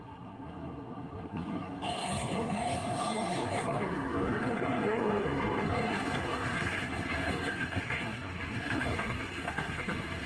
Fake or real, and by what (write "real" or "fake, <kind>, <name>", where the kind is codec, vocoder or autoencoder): fake, codec, SNAC